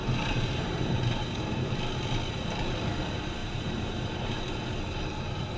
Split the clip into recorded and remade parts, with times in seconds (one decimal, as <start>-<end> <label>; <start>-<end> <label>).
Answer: 0.0-1.7 remade; 1.7-3.4 recorded; 3.4-4.3 remade; 4.3-5.6 recorded